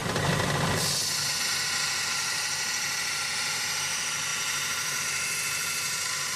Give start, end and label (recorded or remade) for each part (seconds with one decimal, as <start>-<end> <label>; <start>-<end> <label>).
0.0-6.4 recorded